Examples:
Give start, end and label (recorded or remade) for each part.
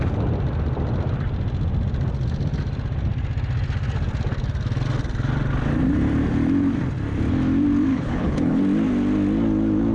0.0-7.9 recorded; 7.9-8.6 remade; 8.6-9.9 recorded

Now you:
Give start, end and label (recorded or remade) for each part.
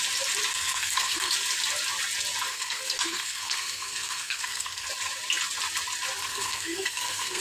0.0-0.5 recorded; 0.5-1.3 remade; 1.3-2.5 recorded; 2.5-4.9 remade; 4.9-6.2 recorded; 6.2-7.4 remade